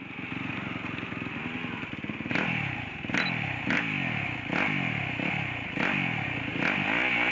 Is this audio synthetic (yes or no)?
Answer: no